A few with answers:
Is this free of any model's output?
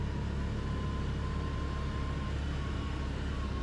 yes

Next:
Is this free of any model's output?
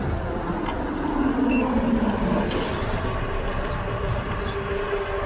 yes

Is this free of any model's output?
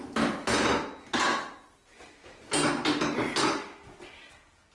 yes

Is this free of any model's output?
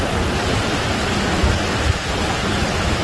yes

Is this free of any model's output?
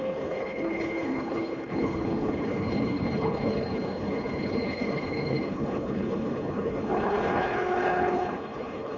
no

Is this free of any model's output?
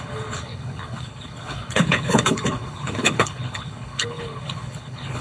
no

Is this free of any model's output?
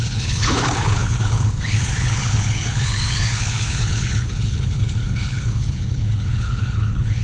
no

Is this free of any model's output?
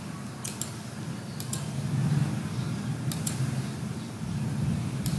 yes